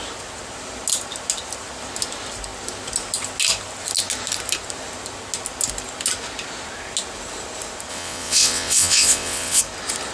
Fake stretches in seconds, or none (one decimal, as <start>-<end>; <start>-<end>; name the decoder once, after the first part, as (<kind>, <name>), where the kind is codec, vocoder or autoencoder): 7.9-9.6 (vocoder, WaveNeXt)